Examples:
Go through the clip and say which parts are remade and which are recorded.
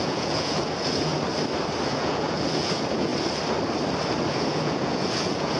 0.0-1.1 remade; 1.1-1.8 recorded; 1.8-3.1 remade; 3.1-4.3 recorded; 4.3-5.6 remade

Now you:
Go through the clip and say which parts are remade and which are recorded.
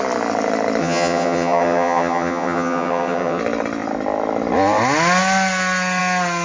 0.0-0.8 recorded; 0.8-3.4 remade; 3.4-6.4 recorded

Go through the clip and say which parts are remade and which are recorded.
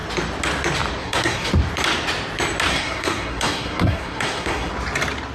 0.0-1.0 recorded; 1.0-1.5 remade; 1.5-2.7 recorded; 2.7-4.7 remade; 4.7-5.3 recorded